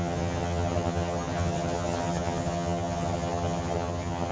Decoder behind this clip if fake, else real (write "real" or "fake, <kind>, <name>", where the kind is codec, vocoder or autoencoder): fake, vocoder, HiFi-GAN